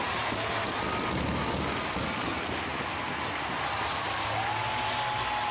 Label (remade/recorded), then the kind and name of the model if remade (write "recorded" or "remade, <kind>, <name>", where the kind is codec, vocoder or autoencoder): recorded